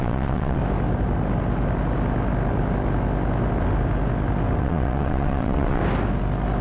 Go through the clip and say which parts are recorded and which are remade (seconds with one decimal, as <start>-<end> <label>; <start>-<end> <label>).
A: 0.0-0.6 remade; 0.6-4.6 recorded; 4.6-5.8 remade; 5.8-6.6 recorded